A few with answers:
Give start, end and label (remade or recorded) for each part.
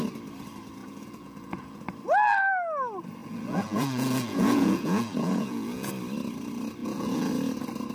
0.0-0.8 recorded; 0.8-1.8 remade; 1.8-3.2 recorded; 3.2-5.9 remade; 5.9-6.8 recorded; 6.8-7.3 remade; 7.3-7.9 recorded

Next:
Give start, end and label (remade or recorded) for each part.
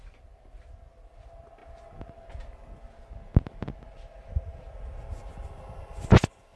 0.0-6.6 recorded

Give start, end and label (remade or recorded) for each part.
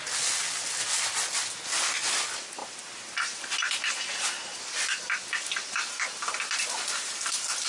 0.0-7.7 recorded